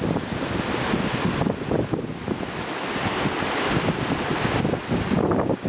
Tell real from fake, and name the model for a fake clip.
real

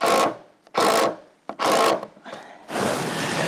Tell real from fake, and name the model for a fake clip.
real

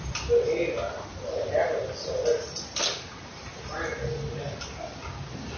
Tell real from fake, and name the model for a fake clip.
real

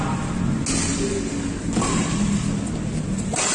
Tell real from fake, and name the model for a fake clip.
real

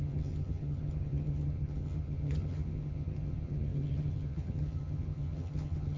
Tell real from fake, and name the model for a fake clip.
fake, vocoder, HiFi-GAN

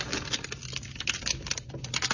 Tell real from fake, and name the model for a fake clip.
real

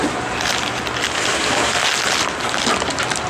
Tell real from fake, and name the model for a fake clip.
real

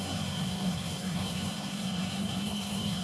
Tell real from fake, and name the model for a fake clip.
fake, codec, SNAC